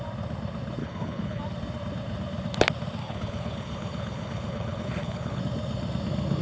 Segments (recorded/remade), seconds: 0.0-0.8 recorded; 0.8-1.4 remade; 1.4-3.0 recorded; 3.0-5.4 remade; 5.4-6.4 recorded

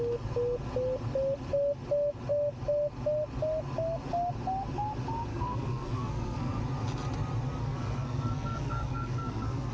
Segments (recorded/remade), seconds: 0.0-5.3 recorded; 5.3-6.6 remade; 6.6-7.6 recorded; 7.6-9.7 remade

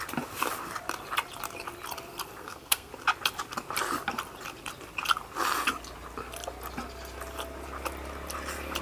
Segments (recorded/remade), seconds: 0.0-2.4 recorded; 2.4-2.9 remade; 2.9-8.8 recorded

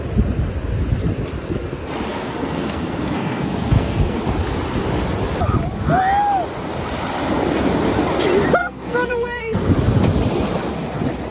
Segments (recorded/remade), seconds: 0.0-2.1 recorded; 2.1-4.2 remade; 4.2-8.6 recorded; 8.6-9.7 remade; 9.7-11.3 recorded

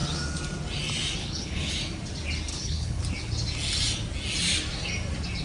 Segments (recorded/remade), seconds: 0.0-1.2 recorded; 1.2-1.7 remade; 1.7-2.5 recorded; 2.5-3.0 remade; 3.0-5.4 recorded